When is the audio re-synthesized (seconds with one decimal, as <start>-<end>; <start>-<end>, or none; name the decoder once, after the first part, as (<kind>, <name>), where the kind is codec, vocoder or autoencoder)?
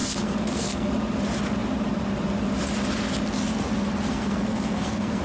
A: 0.0-0.9 (codec, SNAC); 4.1-5.2